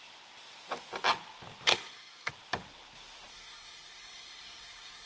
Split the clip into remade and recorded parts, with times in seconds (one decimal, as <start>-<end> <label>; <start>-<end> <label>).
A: 0.0-1.7 recorded; 1.7-2.3 remade; 2.3-3.3 recorded; 3.3-5.1 remade